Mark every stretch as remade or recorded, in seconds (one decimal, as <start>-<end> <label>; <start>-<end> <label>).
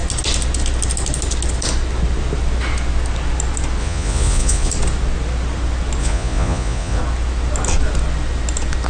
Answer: 0.0-3.8 recorded; 3.8-4.7 remade; 4.7-6.0 recorded; 6.0-7.0 remade; 7.0-8.9 recorded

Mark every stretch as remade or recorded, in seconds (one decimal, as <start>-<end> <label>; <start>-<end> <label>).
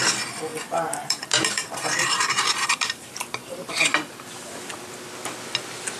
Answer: 0.0-0.5 recorded; 0.5-3.7 remade; 3.7-6.0 recorded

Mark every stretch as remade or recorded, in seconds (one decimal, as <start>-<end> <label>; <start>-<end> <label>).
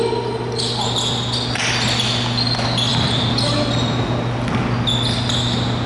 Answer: 0.0-5.9 recorded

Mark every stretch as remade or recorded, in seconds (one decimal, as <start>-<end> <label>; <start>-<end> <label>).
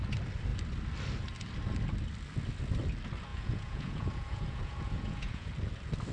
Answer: 0.0-3.3 recorded; 3.3-5.5 remade; 5.5-6.1 recorded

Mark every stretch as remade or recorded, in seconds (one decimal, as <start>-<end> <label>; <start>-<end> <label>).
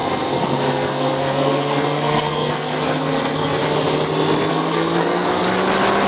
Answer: 0.0-3.6 remade; 3.6-4.5 recorded; 4.5-5.4 remade; 5.4-6.1 recorded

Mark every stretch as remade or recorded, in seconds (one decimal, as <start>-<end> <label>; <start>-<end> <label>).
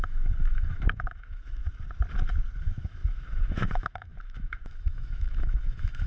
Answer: 0.0-1.6 remade; 1.6-2.6 recorded; 2.6-6.1 remade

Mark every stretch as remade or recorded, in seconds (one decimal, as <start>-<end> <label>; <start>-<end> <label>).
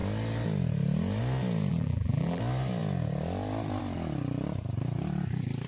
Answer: 0.0-1.7 recorded; 1.7-2.4 remade; 2.4-5.7 recorded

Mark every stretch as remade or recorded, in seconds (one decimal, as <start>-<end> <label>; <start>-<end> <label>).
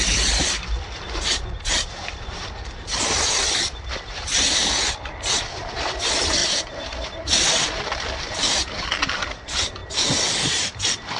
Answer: 0.0-9.8 remade; 9.8-10.5 recorded; 10.5-11.2 remade